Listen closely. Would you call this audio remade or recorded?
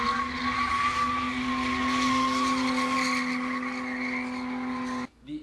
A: recorded